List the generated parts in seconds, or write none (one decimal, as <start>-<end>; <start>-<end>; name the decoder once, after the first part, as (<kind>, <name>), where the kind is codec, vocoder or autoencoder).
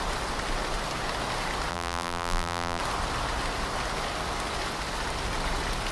1.7-2.8 (vocoder, BigVGAN v2)